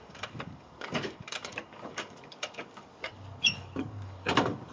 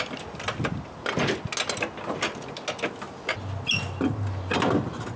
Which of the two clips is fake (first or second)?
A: first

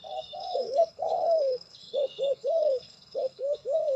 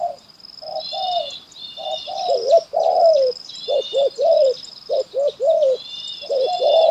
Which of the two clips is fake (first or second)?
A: first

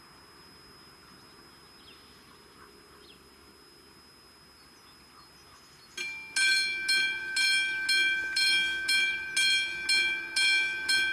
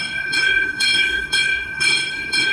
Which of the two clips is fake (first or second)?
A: second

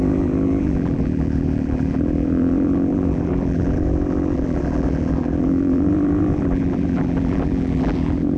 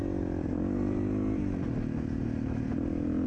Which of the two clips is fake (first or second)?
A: first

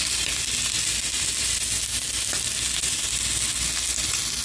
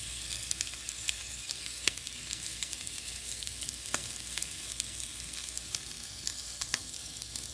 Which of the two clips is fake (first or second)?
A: second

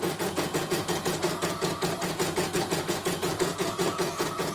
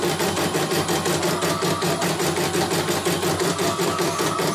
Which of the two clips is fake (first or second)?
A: first